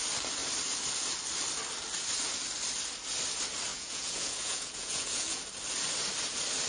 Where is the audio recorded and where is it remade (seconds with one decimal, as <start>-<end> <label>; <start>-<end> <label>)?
0.0-3.7 recorded; 3.7-5.4 remade; 5.4-6.7 recorded